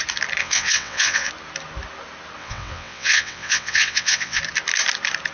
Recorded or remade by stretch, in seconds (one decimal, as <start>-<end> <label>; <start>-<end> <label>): 0.0-0.4 recorded; 0.4-1.3 remade; 1.3-2.4 recorded; 2.4-4.4 remade; 4.4-5.3 recorded